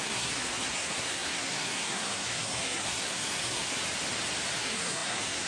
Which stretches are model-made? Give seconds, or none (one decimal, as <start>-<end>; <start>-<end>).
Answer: 0.0-3.8; 4.6-5.5